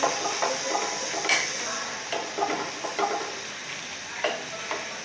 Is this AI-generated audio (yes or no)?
yes